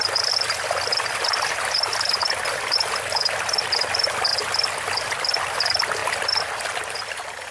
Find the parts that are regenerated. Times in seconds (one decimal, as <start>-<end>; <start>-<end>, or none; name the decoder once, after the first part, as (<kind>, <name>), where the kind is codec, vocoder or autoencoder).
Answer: 0.0-6.0 (vocoder, BigVGAN v2)